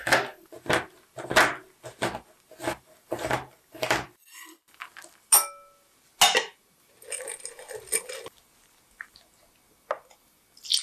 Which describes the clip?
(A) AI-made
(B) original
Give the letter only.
B